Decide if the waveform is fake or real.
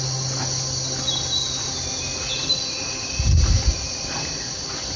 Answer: real